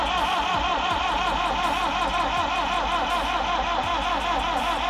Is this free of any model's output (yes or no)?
yes